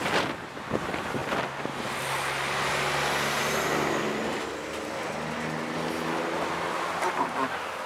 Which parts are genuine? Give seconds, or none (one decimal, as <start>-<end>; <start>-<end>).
none